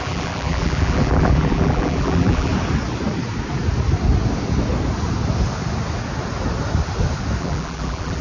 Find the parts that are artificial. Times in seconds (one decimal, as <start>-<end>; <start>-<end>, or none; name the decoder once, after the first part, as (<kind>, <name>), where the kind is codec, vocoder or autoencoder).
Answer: 0.0-2.5 (vocoder, BigVGAN v2); 7.4-8.2